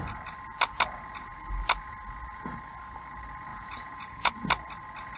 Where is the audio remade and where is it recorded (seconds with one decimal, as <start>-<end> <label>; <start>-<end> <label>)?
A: 0.0-3.5 recorded; 3.5-4.3 remade; 4.3-5.2 recorded

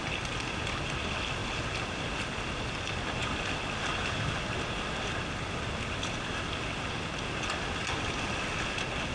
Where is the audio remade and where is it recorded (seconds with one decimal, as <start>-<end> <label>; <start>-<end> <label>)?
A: 0.0-9.1 recorded

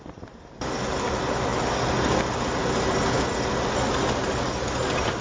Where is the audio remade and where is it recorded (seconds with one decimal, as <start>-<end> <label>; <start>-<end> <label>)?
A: 0.0-5.2 recorded

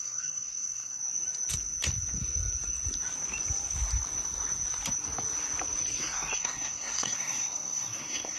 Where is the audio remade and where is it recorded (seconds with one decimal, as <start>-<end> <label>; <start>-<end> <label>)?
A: 0.0-1.0 remade; 1.0-6.0 recorded; 6.0-8.4 remade

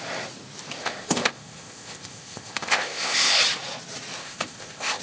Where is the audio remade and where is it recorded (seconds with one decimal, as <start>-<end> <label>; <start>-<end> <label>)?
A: 0.0-0.8 recorded; 0.8-3.4 remade; 3.4-4.2 recorded; 4.2-5.0 remade

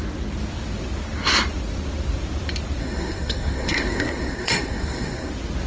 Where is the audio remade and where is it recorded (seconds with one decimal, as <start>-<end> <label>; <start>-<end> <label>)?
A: 0.0-2.8 recorded; 2.8-5.3 remade; 5.3-5.7 recorded